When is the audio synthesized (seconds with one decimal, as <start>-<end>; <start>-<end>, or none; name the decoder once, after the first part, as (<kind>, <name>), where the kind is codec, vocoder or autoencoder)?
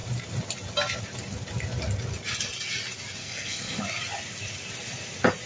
3.2-3.8 (codec, SNAC)